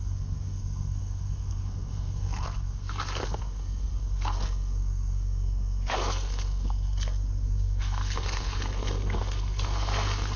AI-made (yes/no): yes